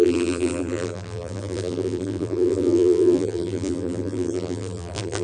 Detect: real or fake fake